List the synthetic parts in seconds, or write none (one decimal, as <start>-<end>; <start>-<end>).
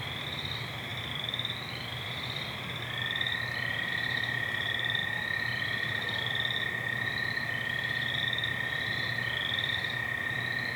5.0-5.6